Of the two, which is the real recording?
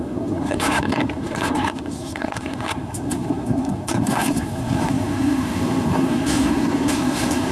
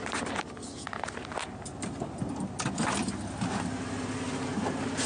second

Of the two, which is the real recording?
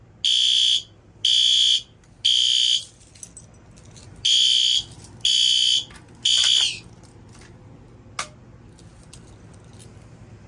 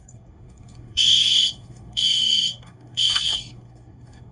first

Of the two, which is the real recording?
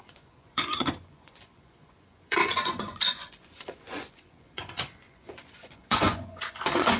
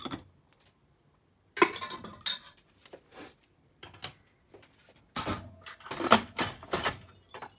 second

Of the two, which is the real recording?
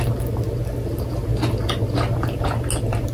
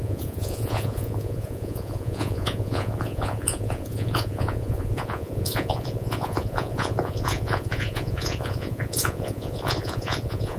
first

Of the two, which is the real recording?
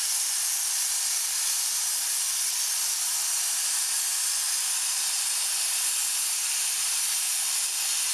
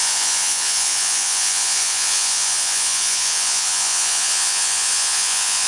first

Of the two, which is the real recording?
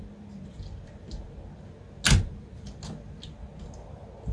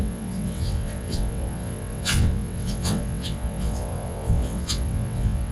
first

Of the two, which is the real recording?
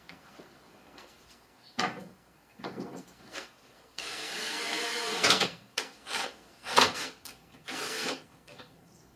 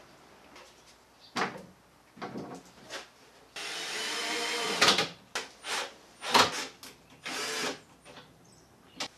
second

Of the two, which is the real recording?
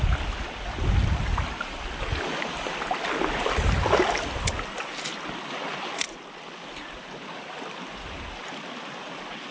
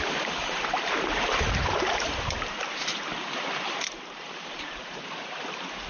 first